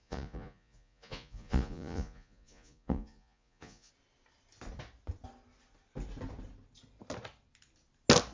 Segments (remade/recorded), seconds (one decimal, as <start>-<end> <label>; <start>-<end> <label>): 0.0-3.9 remade; 3.9-8.3 recorded